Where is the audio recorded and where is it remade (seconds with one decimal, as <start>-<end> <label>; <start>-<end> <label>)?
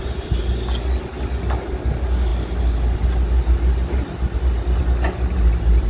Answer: 0.0-5.9 recorded